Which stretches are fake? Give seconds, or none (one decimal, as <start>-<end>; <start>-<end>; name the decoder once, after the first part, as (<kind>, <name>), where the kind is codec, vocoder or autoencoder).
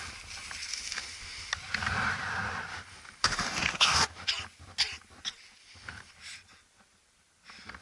0.7-1.5 (autoencoder, DAC-VAE); 2.7-4.3; 5.6-6.1